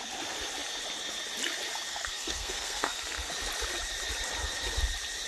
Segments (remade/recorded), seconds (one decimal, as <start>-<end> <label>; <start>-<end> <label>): 0.0-1.9 recorded; 1.9-3.3 remade; 3.3-5.3 recorded